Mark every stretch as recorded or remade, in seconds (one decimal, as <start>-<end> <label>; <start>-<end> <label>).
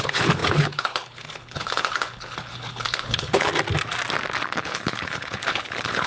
0.0-3.5 remade; 3.5-4.4 recorded; 4.4-6.1 remade